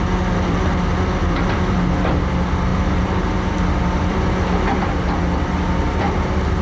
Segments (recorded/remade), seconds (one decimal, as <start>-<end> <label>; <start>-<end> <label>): 0.0-1.2 recorded; 1.2-1.9 remade; 1.9-6.6 recorded

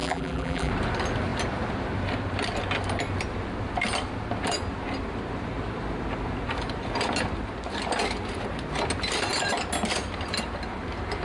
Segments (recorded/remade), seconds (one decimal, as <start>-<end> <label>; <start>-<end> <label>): 0.0-0.7 remade; 0.7-11.2 recorded

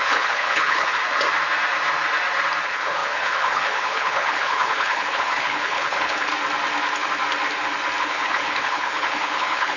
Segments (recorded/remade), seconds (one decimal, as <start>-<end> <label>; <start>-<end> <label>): 0.0-1.0 remade; 1.0-2.6 recorded; 2.6-6.3 remade; 6.3-8.0 recorded; 8.0-9.8 remade

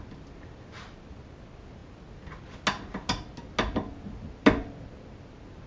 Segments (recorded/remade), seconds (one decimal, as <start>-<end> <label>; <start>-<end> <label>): 0.0-5.7 recorded